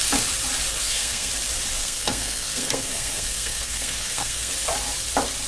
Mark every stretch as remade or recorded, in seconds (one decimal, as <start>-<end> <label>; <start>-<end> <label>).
0.0-0.8 recorded; 0.8-1.3 remade; 1.3-1.8 recorded; 1.8-4.5 remade; 4.5-5.5 recorded